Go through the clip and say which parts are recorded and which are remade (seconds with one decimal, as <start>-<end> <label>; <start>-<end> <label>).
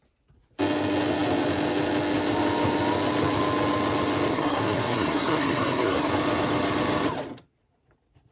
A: 0.0-4.3 recorded; 4.3-6.1 remade; 6.1-8.3 recorded